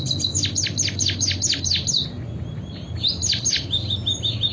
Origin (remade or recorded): recorded